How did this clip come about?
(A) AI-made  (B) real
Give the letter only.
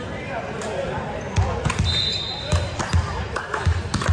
B